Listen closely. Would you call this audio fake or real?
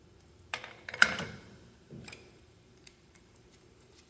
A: fake